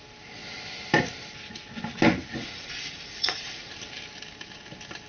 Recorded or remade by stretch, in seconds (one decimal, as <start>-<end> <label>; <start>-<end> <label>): 0.0-2.4 recorded; 2.4-3.7 remade; 3.7-5.1 recorded